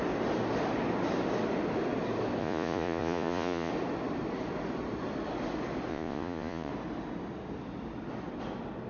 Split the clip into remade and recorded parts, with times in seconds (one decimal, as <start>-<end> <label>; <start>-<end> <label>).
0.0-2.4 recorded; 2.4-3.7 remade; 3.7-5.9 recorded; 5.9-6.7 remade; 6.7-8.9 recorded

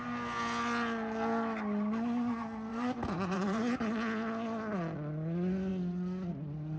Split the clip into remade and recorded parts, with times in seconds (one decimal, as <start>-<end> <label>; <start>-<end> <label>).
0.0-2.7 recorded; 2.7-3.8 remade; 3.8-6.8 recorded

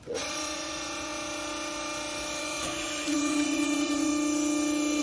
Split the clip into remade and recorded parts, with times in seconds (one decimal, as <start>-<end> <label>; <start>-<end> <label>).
0.0-1.1 remade; 1.1-2.4 recorded; 2.4-4.1 remade; 4.1-5.0 recorded